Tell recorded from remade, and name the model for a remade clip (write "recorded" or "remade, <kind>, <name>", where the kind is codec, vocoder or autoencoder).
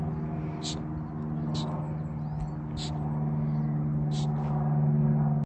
recorded